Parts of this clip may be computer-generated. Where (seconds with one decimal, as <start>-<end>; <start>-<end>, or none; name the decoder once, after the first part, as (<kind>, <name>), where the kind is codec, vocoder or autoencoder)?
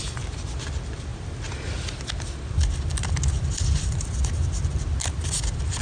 none